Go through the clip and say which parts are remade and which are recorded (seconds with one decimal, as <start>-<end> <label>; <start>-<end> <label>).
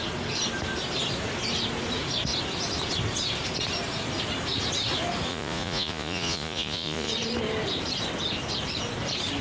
0.0-5.3 recorded; 5.3-7.1 remade; 7.1-9.4 recorded